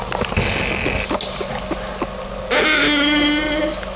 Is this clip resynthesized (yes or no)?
no